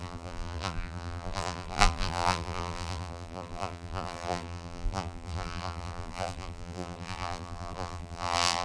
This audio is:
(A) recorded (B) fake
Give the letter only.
B